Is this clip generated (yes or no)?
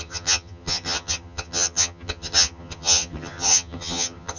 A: yes